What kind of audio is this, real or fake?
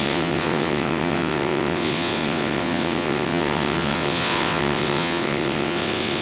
fake